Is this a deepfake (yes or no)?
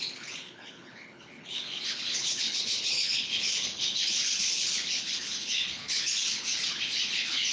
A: yes